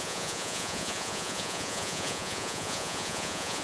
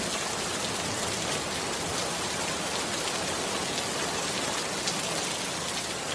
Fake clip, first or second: first